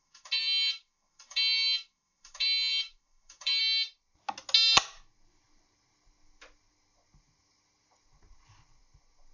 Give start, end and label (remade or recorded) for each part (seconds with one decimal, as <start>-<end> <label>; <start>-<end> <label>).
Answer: 0.0-3.6 remade; 3.6-9.3 recorded